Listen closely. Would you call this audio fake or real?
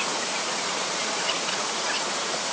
fake